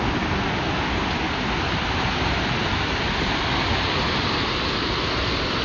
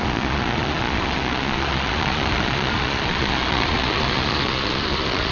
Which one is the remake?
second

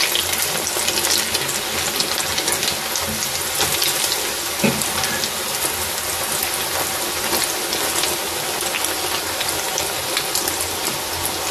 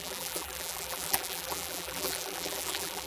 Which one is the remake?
second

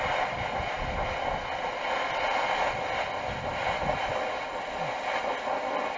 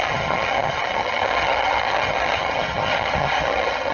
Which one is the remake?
second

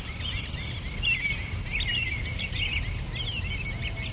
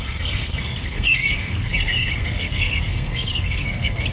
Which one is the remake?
second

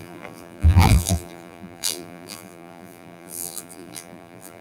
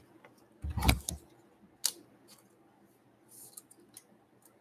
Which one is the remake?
first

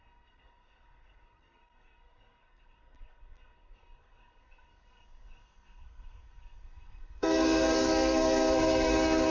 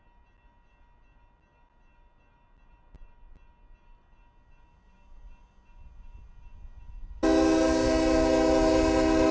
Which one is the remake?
first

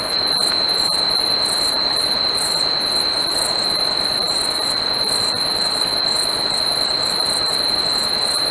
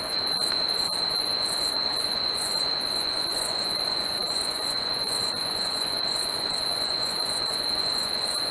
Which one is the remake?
second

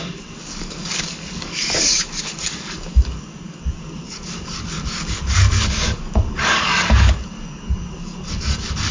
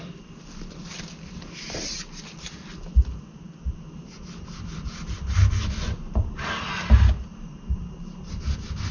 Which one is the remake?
first